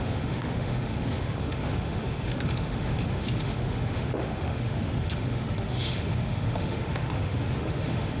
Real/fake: fake